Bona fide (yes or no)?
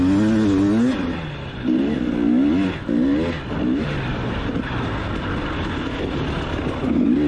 yes